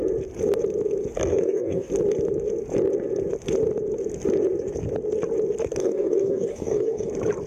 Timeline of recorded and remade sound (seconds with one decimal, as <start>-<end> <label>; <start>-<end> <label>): 0.0-1.3 recorded; 1.3-1.9 remade; 1.9-5.8 recorded; 5.8-7.1 remade; 7.1-7.5 recorded